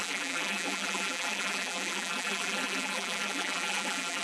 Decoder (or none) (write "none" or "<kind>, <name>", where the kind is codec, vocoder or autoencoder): vocoder, BigVGAN v2